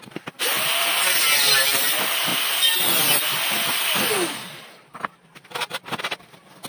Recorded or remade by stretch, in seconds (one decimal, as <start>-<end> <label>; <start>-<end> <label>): 0.0-6.7 remade